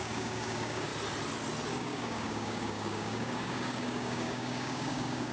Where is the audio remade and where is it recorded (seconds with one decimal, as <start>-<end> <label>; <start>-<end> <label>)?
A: 0.0-0.9 remade; 0.9-1.7 recorded; 1.7-5.3 remade